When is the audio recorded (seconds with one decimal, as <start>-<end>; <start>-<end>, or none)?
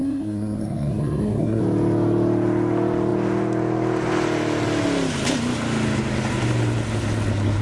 1.6-7.6